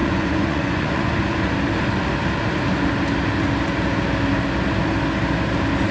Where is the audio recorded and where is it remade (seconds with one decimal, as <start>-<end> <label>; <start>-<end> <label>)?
0.0-1.1 remade; 1.1-5.9 recorded